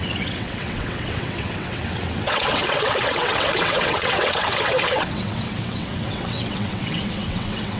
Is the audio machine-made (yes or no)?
yes